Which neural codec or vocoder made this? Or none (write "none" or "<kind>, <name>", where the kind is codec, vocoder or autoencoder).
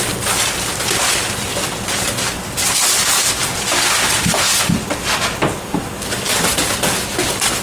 none